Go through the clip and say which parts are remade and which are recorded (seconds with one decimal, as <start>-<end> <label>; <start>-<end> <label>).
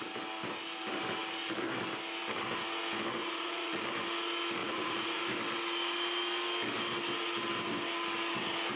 0.0-3.2 recorded; 3.2-3.8 remade; 3.8-4.6 recorded; 4.6-5.2 remade; 5.2-8.8 recorded